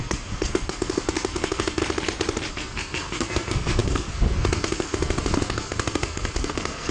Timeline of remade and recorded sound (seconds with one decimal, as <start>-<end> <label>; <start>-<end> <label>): 0.0-1.8 remade; 1.8-2.5 recorded; 2.5-6.9 remade